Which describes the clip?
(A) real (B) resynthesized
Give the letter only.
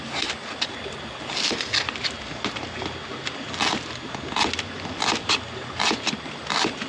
A